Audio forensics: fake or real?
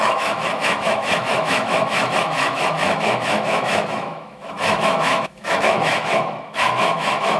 fake